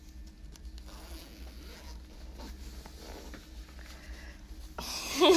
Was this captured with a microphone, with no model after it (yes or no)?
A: yes